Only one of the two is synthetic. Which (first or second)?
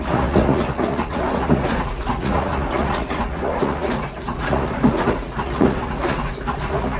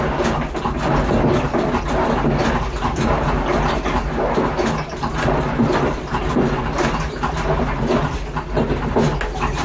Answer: first